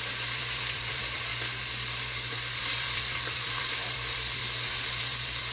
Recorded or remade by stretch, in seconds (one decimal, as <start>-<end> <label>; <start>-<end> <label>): 0.0-1.3 remade; 1.3-2.6 recorded; 2.6-4.4 remade; 4.4-5.0 recorded; 5.0-5.5 remade